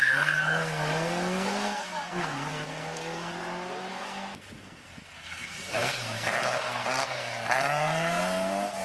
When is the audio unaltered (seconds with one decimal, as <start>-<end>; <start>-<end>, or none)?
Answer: 3.3-3.9